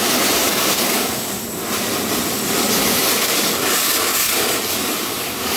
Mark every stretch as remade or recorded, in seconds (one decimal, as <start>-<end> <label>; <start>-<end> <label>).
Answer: 0.0-0.5 recorded; 0.5-1.4 remade; 1.4-3.1 recorded; 3.1-5.6 remade